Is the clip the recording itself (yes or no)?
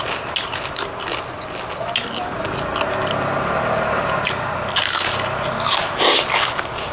yes